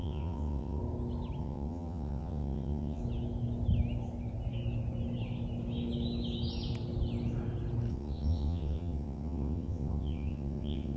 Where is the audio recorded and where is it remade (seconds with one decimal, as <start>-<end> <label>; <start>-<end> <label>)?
0.0-0.8 remade; 0.8-1.4 recorded; 1.4-3.0 remade; 3.0-7.9 recorded; 7.9-11.0 remade